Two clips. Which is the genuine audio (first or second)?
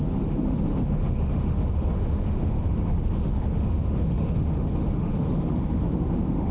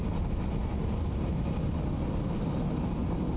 second